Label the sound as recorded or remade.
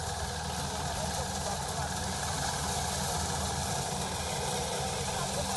recorded